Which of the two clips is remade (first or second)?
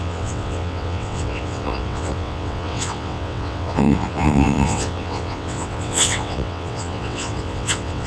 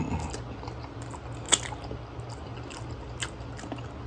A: first